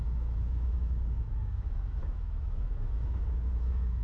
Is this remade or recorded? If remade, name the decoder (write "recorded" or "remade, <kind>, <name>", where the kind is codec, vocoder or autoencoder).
remade, autoencoder, DAC-VAE